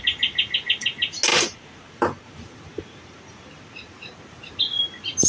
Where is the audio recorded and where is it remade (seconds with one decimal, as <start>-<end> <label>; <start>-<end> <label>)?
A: 0.0-1.3 recorded; 1.3-4.5 remade; 4.5-5.3 recorded